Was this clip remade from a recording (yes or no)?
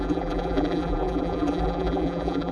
yes